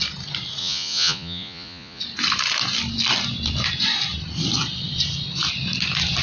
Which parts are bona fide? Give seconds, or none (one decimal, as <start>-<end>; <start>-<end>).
0.0-0.6; 2.0-6.2